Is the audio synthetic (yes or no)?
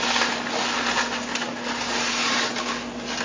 no